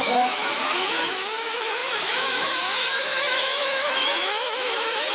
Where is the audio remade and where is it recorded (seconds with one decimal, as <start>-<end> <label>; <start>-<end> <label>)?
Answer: 0.0-5.1 remade